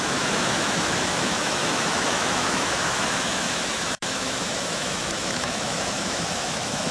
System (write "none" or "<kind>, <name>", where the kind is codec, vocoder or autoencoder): autoencoder, DAC-VAE